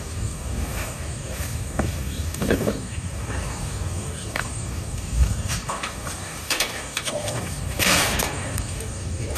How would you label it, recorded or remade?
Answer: remade